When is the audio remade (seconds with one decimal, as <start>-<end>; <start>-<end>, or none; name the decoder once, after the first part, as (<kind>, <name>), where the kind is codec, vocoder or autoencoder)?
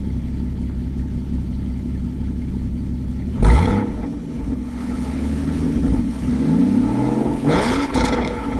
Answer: 0.0-6.3 (codec, HILCodec); 7.2-8.6